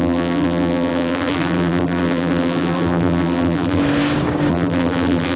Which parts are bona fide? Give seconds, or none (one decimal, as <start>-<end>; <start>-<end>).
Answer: 3.8-4.5